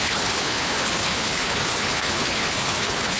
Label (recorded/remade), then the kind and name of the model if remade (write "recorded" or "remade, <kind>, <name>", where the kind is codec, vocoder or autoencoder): remade, codec, HILCodec